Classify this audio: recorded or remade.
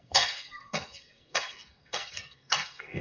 remade